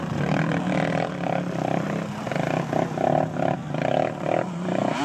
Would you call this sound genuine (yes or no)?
yes